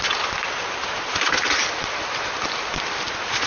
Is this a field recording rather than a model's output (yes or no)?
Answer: yes